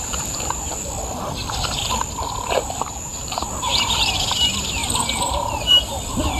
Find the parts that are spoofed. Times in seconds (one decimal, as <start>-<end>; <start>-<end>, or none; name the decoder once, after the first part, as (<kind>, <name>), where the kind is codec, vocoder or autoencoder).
0.0-6.4 (vocoder, BigVGAN v2)